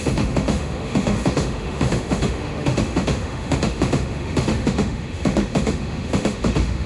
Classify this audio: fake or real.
fake